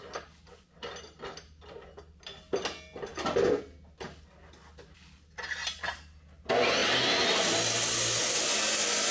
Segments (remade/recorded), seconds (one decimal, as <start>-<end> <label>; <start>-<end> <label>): 0.0-9.1 recorded